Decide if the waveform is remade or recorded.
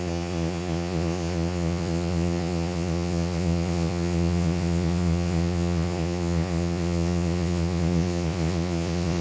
remade